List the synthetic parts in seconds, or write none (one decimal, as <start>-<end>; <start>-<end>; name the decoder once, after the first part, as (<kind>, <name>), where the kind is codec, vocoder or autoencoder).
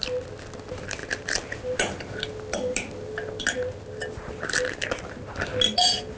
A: none